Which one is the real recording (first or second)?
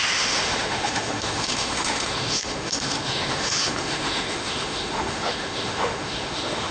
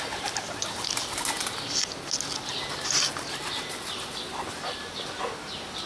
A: second